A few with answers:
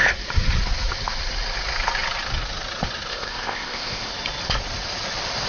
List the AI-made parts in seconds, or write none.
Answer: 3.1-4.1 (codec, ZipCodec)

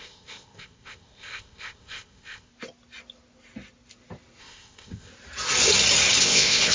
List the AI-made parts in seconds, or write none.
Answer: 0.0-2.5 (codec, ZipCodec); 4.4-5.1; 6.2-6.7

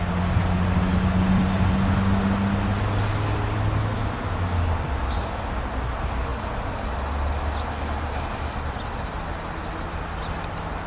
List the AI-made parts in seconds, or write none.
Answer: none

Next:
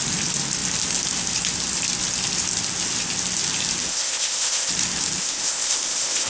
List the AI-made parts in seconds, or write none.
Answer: 3.9-4.7 (codec, ZipCodec); 5.2-6.3

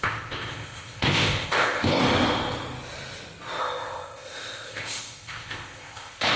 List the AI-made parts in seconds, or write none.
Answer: 0.0-2.0 (codec, ZipCodec); 3.6-6.4

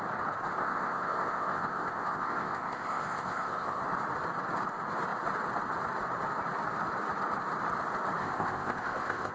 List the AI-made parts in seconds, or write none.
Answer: 0.6-3.8 (codec, ZipCodec); 8.2-9.3